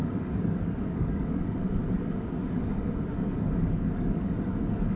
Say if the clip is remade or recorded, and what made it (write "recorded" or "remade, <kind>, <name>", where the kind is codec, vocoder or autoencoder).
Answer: remade, codec, DAC